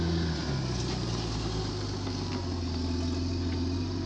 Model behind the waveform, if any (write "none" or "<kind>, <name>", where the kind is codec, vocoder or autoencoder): none